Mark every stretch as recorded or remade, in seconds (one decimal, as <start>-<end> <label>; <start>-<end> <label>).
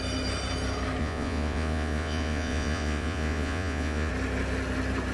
0.0-1.0 recorded; 1.0-4.1 remade; 4.1-5.1 recorded